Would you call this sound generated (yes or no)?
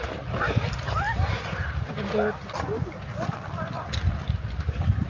no